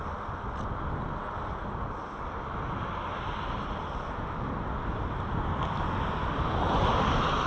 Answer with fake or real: real